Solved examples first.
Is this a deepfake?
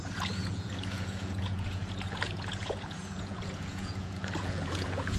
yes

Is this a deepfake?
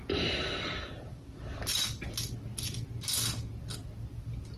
no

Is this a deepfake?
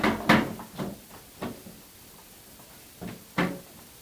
no